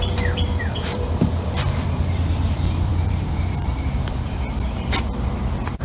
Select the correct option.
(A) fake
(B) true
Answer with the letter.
A